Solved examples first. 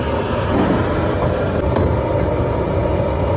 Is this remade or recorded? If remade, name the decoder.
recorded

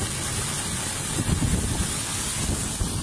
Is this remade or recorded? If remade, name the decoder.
recorded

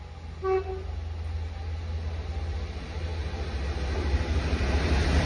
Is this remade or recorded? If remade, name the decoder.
recorded